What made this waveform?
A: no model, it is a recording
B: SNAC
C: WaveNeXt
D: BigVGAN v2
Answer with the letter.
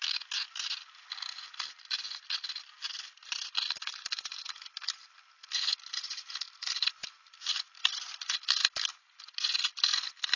A